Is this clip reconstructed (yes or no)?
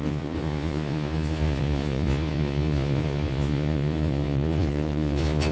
yes